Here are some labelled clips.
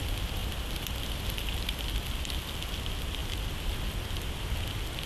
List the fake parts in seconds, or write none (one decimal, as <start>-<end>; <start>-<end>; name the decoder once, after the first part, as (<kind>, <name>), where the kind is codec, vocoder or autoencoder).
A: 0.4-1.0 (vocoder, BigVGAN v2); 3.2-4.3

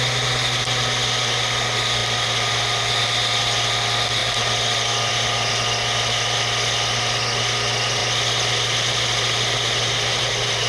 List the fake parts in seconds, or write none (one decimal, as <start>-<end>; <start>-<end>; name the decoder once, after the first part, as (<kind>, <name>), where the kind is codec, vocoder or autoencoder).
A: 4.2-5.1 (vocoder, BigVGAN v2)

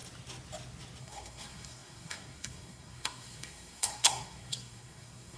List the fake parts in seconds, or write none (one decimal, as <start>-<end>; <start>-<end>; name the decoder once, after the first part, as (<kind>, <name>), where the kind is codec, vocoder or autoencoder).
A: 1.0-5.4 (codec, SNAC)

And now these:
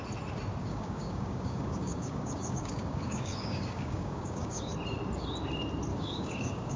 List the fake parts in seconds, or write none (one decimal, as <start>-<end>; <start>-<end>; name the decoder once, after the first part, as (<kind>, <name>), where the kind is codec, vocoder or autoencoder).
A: 0.6-4.7 (codec, DAC); 5.9-6.8